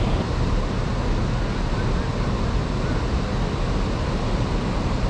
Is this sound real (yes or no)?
yes